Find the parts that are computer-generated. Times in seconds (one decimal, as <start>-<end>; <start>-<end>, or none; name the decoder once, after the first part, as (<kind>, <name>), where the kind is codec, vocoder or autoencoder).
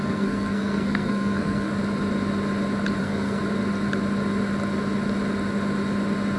0.0-1.7 (codec, SNAC); 3.0-3.4